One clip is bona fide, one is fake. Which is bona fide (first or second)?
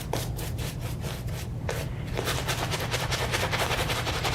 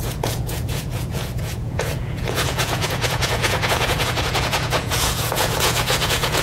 first